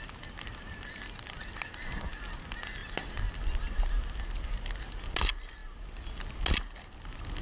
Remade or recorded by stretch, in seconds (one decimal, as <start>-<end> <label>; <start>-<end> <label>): 0.0-7.4 recorded